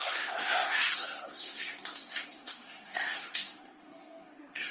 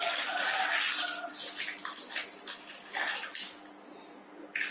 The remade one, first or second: first